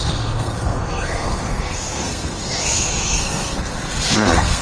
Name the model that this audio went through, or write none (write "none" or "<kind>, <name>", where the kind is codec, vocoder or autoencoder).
codec, SNAC